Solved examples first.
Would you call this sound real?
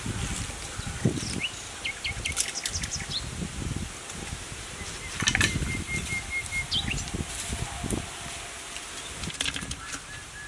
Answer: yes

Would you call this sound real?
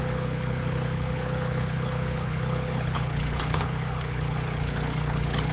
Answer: no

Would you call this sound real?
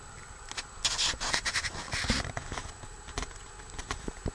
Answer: yes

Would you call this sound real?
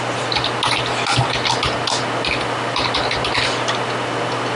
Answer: yes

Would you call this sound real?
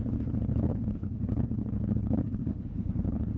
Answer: no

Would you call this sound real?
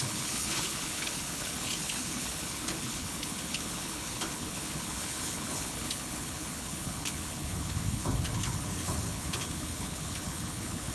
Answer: no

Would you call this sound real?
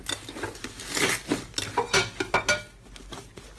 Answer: yes